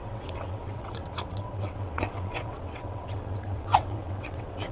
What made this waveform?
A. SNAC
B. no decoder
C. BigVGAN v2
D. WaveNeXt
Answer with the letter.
D